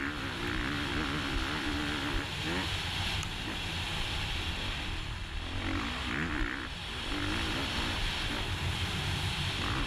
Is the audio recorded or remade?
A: recorded